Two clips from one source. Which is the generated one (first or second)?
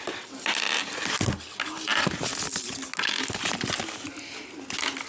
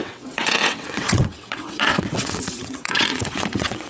second